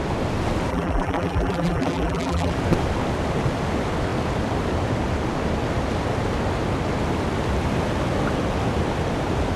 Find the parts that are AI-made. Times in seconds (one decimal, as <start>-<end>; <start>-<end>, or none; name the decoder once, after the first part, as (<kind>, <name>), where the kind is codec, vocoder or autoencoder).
0.7-2.5 (vocoder, BigVGAN v2)